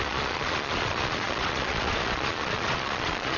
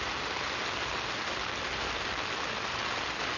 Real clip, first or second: second